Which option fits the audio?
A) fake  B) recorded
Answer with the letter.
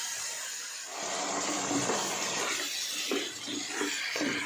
A